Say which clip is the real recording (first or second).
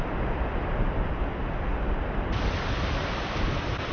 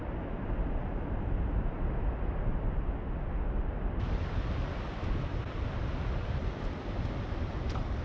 second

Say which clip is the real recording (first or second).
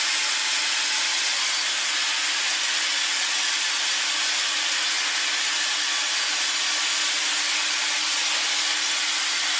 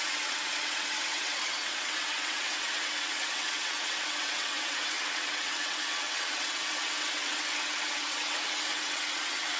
first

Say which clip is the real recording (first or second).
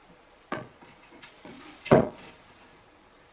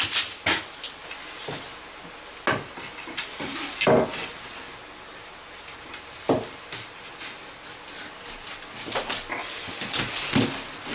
second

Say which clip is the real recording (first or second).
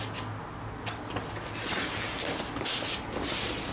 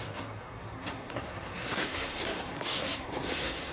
first